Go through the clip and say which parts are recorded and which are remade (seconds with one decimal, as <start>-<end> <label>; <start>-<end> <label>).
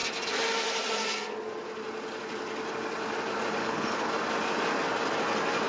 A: 0.0-3.6 recorded; 3.6-4.1 remade; 4.1-5.7 recorded